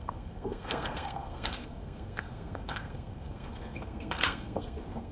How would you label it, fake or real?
fake